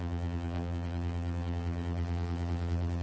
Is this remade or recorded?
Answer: remade